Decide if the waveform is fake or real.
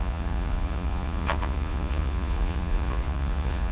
fake